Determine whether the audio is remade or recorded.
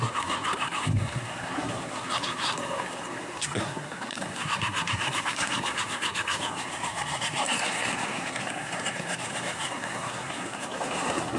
remade